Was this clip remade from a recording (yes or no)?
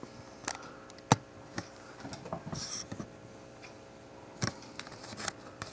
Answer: no